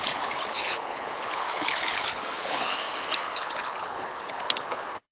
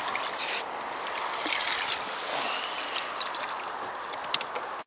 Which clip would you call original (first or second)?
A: second